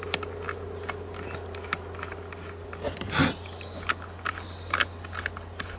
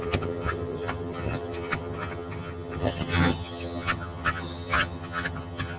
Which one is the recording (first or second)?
first